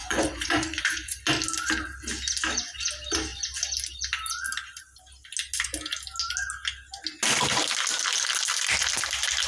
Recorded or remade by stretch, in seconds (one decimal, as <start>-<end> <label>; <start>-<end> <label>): 0.0-1.2 remade; 1.2-9.5 recorded